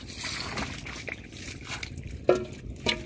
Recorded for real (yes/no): yes